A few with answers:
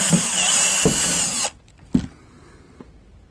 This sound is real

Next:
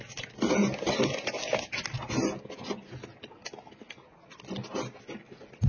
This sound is real